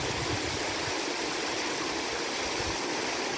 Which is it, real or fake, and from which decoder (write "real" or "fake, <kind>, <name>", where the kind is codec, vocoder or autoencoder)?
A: fake, vocoder, BigVGAN v2